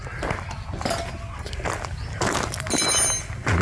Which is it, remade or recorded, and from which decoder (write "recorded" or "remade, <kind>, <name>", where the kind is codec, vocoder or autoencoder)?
recorded